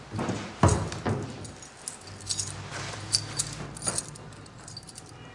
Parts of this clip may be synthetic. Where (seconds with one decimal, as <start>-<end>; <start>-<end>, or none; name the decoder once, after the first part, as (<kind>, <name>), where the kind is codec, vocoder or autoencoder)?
none